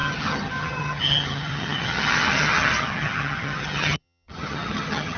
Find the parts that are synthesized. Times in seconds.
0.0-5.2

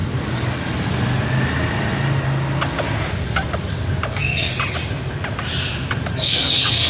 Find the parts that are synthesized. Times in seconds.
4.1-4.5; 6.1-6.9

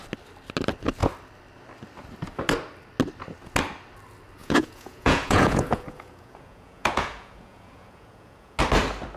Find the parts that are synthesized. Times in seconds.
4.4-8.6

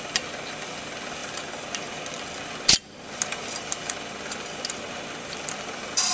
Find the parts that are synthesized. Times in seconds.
none

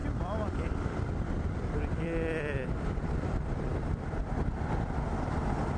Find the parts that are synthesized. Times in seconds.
0.0-5.8

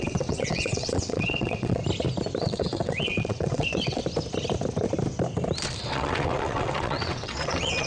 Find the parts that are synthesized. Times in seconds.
0.0-1.8; 2.4-4.0; 5.9-7.9

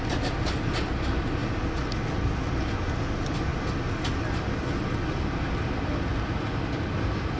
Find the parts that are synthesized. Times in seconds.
none

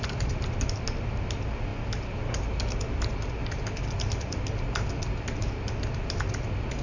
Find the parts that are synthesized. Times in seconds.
none